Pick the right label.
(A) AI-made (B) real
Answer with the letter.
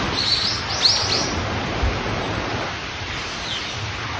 B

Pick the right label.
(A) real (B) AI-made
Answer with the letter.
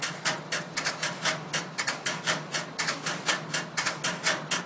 A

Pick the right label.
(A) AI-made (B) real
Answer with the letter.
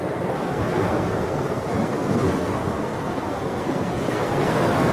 A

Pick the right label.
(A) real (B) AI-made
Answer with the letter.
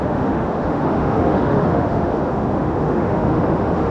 B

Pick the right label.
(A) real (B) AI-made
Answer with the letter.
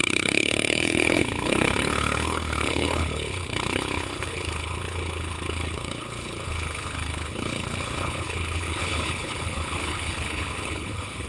B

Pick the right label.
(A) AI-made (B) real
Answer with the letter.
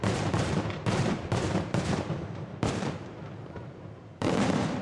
A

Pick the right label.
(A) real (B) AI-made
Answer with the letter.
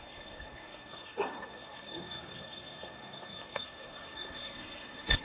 B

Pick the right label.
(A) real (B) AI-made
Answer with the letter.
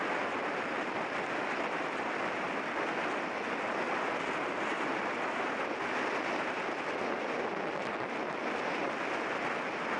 A